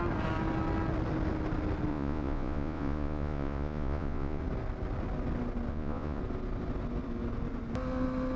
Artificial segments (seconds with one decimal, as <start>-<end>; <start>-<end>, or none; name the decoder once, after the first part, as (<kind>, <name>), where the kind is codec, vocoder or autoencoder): 1.9-4.4 (vocoder, Vocos); 5.7-6.2